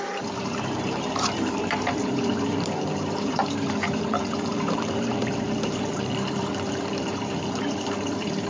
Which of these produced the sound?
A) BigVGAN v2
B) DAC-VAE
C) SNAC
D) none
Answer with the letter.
A